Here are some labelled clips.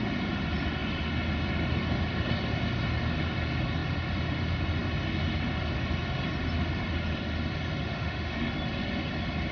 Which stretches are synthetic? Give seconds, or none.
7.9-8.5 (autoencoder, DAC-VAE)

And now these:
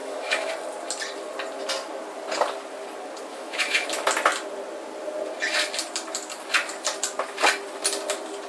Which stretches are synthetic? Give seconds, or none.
0.0-0.5 (autoencoder, DAC-VAE); 3.3-3.9

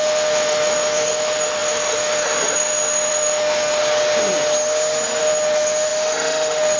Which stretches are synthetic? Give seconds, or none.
0.0-3.8 (autoencoder, DAC-VAE); 5.2-6.8

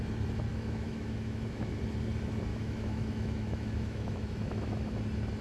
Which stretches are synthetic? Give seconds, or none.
0.5-1.8 (autoencoder, DAC-VAE); 2.5-5.0

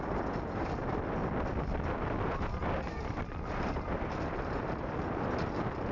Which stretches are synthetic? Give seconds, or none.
none